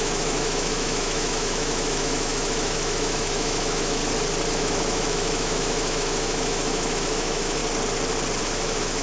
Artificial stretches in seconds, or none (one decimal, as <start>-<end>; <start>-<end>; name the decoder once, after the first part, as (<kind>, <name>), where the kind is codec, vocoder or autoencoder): 0.0-4.0 (autoencoder, DAC-VAE); 4.5-7.6; 8.4-9.0